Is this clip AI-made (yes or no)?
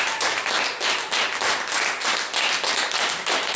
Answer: no